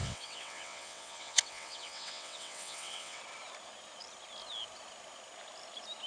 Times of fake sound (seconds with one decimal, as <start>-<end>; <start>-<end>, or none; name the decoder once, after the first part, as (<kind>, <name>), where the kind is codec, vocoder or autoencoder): 0.0-3.2 (vocoder, WaveNeXt)